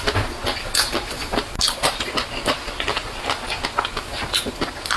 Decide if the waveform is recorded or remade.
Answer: recorded